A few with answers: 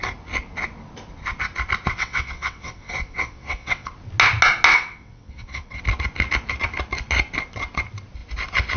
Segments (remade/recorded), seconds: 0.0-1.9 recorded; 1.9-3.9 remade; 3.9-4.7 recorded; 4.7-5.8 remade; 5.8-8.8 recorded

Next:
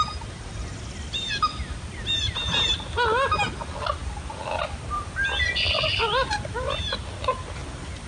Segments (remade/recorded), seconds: 0.0-8.1 recorded

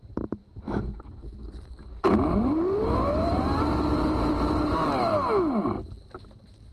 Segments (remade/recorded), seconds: 0.0-0.4 remade; 0.4-2.4 recorded; 2.4-5.1 remade; 5.1-6.7 recorded

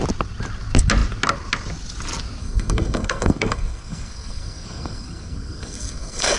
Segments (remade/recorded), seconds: 0.0-2.4 recorded; 2.4-6.4 remade

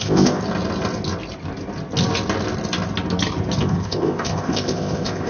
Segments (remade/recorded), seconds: 0.0-0.4 remade; 0.4-3.6 recorded; 3.6-5.3 remade

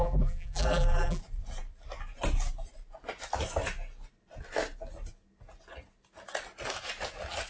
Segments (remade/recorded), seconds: 0.0-1.2 remade; 1.2-7.5 recorded